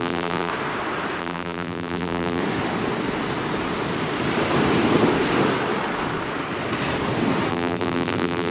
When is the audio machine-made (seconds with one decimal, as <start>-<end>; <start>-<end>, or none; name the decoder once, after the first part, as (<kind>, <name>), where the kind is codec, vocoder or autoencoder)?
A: 0.0-0.5 (vocoder, BigVGAN v2); 1.2-2.4; 7.5-8.5

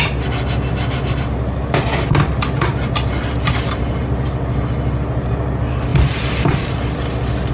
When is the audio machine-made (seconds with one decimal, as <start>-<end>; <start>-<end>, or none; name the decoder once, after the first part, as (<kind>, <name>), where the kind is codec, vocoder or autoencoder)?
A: none

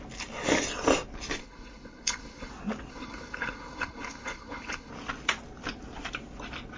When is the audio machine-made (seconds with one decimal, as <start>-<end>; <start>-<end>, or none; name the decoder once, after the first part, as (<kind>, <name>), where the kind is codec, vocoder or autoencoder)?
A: 1.4-2.5 (codec, HILCodec); 2.9-4.9

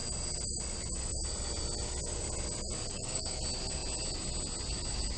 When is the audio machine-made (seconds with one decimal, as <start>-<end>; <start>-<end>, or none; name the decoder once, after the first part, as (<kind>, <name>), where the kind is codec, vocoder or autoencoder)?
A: 2.9-3.4 (codec, DAC)

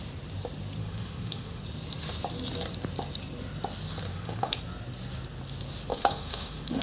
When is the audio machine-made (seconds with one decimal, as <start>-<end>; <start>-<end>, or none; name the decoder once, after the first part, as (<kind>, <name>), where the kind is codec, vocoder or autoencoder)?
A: 0.8-1.6 (autoencoder, DAC-VAE); 4.1-4.6; 5.9-6.8